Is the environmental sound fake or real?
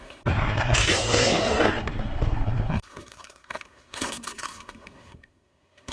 fake